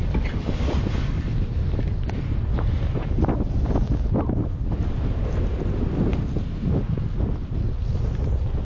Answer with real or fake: fake